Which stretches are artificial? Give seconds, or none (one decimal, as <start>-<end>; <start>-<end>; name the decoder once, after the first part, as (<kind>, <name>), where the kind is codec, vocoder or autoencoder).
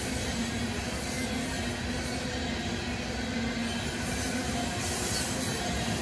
none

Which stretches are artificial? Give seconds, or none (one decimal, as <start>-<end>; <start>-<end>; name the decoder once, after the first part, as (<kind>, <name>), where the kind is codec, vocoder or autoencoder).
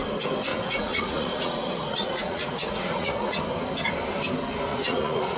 0.5-3.4 (vocoder, Vocos); 4.7-5.4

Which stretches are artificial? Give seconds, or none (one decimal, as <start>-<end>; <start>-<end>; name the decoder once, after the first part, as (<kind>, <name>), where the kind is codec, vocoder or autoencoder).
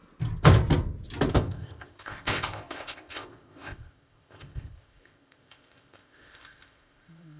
1.3-7.4 (codec, ZipCodec)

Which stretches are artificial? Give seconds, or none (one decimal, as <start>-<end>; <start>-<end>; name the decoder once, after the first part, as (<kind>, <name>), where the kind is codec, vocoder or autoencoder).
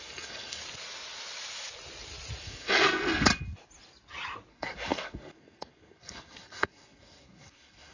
0.0-0.6 (codec, SNAC); 2.4-3.3; 4.5-7.9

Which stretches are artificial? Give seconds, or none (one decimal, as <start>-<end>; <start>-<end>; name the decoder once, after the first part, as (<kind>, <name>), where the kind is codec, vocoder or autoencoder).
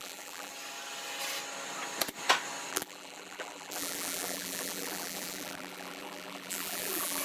0.0-0.5 (vocoder, BigVGAN v2); 2.7-7.2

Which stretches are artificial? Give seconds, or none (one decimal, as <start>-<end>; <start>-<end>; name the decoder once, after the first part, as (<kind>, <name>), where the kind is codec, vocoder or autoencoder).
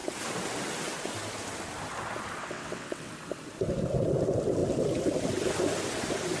2.4-3.1 (vocoder, WaveNeXt)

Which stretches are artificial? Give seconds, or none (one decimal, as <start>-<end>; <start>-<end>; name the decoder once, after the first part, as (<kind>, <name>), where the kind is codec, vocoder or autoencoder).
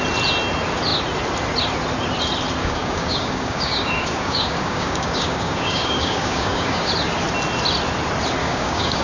2.6-6.9 (codec, DAC); 8.4-9.0